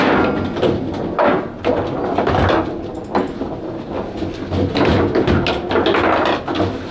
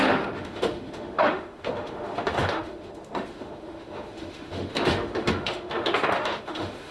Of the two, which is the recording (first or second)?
first